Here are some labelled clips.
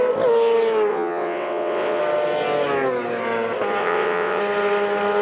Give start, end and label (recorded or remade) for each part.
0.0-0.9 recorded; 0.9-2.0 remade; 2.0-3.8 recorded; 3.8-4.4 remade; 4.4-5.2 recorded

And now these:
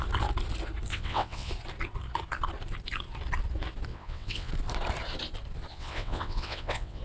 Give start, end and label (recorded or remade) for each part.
0.0-0.9 recorded; 0.9-1.5 remade; 1.5-3.9 recorded; 3.9-4.5 remade; 4.5-5.7 recorded; 5.7-7.0 remade